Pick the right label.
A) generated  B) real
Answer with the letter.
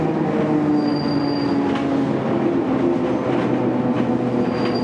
B